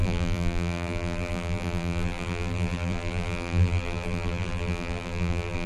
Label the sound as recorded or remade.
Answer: remade